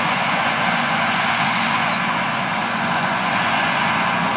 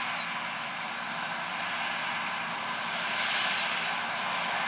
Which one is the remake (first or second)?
first